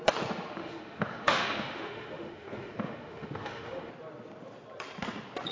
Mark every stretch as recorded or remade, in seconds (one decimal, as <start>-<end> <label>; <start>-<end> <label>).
0.0-0.6 recorded; 0.6-3.9 remade; 3.9-5.5 recorded